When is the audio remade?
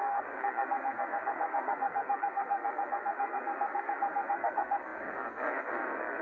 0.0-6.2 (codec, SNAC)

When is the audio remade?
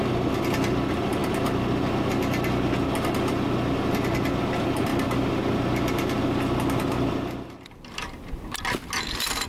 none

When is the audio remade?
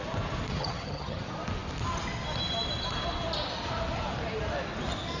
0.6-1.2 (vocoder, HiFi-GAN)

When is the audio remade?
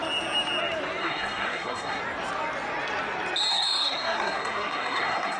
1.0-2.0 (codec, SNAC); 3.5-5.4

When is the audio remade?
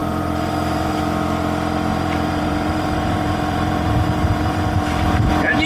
0.0-1.0 (vocoder, BigVGAN v2); 1.9-5.3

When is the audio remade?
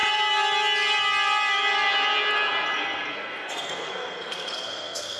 3.1-5.2 (codec, SNAC)